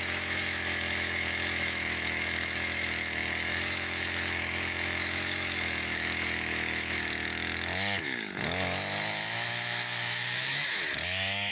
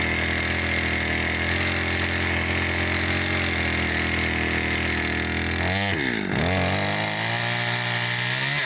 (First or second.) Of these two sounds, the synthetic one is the first